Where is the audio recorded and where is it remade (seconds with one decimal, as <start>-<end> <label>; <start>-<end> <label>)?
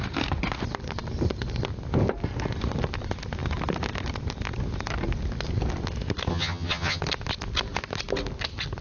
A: 0.0-6.3 recorded; 6.3-7.0 remade; 7.0-8.8 recorded